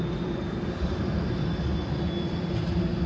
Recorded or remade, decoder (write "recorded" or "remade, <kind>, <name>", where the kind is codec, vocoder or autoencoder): recorded